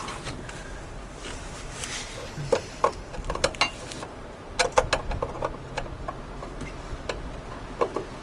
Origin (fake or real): real